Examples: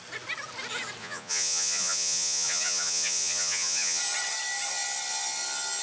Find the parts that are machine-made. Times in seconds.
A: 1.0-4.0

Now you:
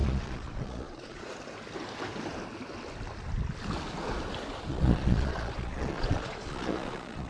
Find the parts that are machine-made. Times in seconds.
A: 0.0-1.3; 4.7-7.3

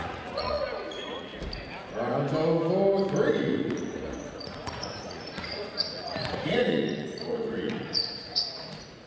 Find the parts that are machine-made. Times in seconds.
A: 0.0-1.3; 3.3-9.1

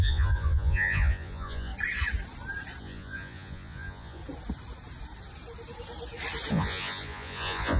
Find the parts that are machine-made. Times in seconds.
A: 0.0-1.7; 2.8-4.2; 6.5-7.8

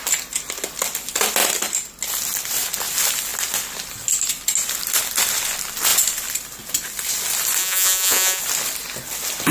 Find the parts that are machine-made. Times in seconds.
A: 7.6-8.4

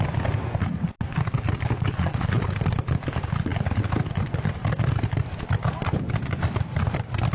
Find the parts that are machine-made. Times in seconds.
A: 1.9-2.5

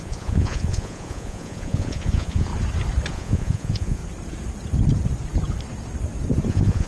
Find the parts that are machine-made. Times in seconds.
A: 0.0-2.5; 3.1-4.0; 6.5-6.9

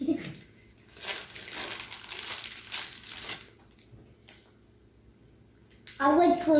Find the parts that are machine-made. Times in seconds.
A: none